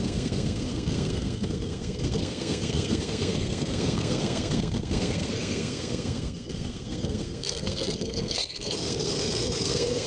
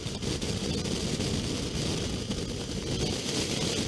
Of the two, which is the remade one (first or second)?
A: first